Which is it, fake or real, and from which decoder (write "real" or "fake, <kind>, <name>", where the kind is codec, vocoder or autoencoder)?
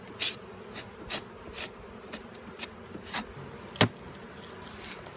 real